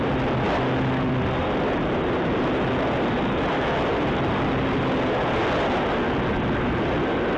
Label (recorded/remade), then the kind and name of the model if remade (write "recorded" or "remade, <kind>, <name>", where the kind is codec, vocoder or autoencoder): recorded